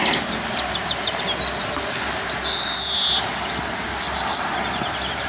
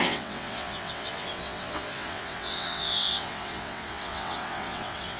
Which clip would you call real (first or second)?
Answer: first